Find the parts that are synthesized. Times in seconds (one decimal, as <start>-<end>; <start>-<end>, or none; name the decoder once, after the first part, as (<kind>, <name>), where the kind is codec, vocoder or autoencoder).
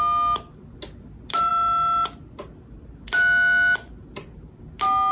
none